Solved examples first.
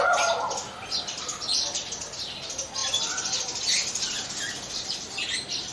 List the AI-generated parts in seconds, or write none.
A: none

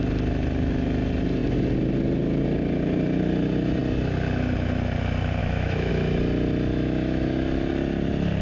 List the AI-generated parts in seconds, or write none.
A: 5.4-5.9 (autoencoder, DAC-VAE); 6.7-7.7

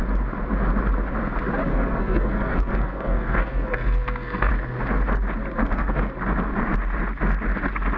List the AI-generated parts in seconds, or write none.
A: 1.7-4.5 (codec, SNAC); 5.6-6.1

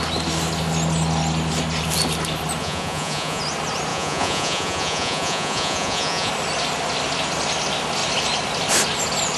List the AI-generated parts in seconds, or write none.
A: 2.6-3.4 (vocoder, Vocos); 3.9-6.3